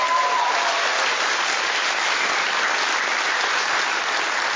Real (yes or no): no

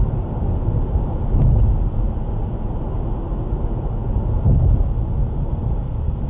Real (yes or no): yes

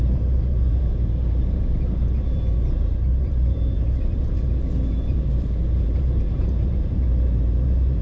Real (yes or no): no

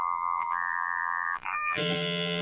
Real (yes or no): no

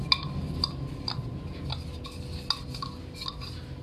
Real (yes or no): yes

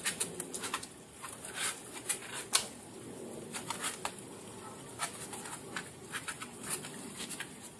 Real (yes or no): yes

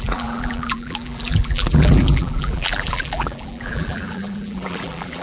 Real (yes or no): no